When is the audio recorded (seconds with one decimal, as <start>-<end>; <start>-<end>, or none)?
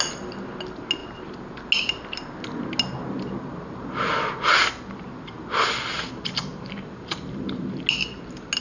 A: 0.0-6.5; 7.6-8.6